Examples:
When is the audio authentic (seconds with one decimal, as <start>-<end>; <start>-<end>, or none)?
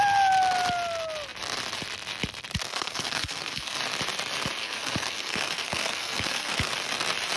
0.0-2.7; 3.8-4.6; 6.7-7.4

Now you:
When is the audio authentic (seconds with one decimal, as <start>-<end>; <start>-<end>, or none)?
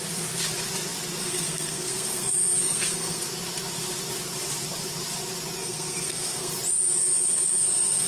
0.0-1.2; 3.2-5.6; 6.5-7.0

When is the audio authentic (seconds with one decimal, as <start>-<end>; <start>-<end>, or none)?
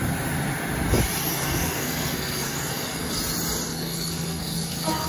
0.0-1.3; 3.1-3.7